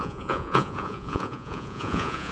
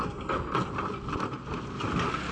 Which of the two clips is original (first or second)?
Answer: second